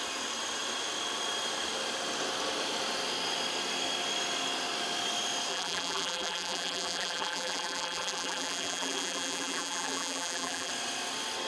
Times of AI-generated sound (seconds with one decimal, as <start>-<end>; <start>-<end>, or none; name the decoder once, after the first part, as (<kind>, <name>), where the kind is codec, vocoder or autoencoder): 5.5-10.7 (vocoder, BigVGAN v2)